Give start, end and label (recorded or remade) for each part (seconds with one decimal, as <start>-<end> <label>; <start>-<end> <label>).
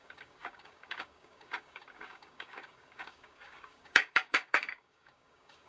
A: 0.0-5.7 remade